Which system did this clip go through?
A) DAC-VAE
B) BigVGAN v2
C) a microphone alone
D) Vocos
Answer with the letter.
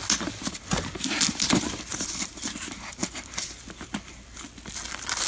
C